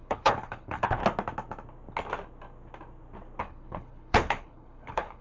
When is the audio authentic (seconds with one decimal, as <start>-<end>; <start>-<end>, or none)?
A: 1.0-3.4